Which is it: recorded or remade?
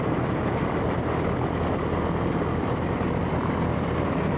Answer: recorded